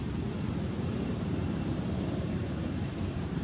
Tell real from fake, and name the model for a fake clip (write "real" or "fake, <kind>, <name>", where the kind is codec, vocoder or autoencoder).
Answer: fake, vocoder, BigVGAN v2